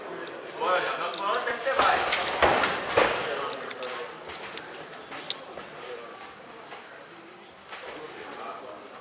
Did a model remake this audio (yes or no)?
yes